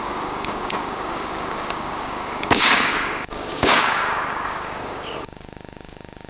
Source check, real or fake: fake